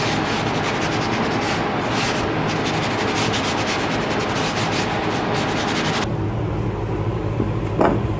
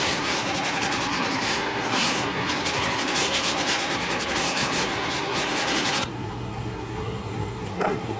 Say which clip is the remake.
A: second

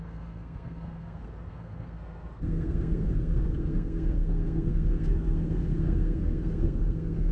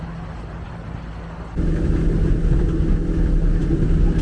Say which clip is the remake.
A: first